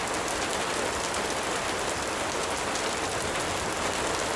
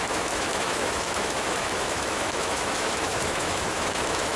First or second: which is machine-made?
second